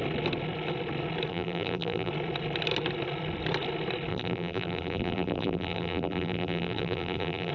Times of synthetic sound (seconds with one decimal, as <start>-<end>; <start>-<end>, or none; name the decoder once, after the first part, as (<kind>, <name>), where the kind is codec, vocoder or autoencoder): 1.3-2.1 (vocoder, BigVGAN v2); 4.1-7.5